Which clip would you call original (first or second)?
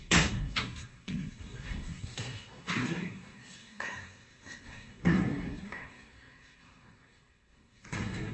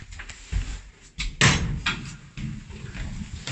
second